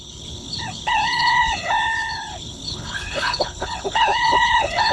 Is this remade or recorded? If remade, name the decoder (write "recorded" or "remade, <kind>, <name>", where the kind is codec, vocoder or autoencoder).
remade, codec, HILCodec